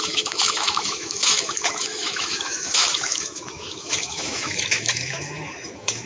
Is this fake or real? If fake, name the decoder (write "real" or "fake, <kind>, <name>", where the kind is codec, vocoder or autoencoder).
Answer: fake, autoencoder, DAC-VAE